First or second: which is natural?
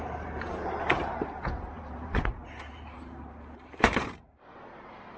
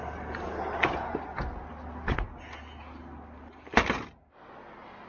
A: second